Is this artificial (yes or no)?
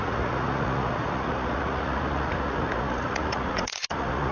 yes